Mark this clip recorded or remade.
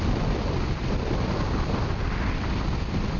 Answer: recorded